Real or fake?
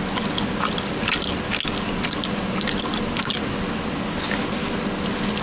real